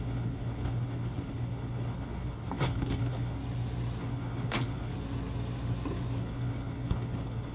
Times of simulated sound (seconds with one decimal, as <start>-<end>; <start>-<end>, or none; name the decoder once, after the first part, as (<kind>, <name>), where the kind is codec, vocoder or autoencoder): 0.0-3.4 (codec, HILCodec); 4.0-4.9; 6.2-7.5